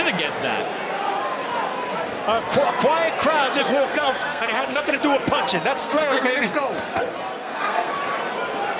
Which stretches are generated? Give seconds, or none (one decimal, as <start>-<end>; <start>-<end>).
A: 3.6-5.0; 5.8-6.6; 7.4-7.9